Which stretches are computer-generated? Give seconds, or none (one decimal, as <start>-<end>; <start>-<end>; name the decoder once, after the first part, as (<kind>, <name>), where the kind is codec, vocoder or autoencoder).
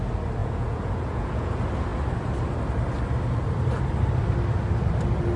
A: 0.4-1.5 (vocoder, Vocos)